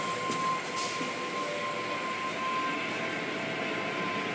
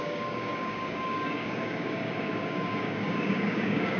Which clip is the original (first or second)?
first